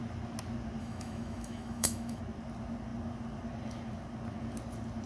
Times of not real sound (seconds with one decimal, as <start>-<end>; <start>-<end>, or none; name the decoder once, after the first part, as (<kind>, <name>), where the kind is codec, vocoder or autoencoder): 0.8-2.2 (autoencoder, DAC-VAE)